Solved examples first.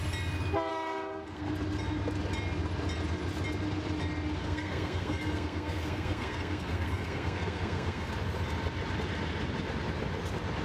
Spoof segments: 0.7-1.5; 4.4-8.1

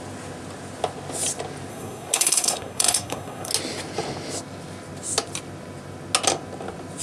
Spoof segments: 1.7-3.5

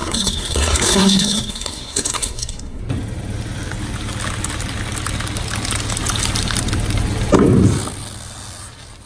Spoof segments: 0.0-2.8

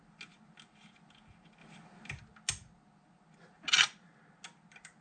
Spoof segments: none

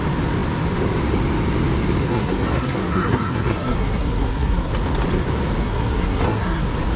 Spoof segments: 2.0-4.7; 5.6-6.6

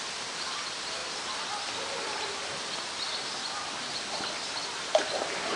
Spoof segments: none